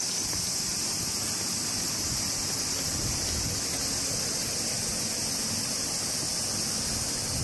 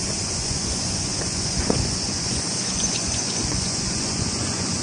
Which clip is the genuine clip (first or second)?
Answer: first